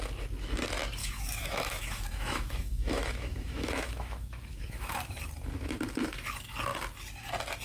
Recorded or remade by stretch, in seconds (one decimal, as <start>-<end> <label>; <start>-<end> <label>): 0.0-1.0 recorded; 1.0-5.0 remade; 5.0-7.6 recorded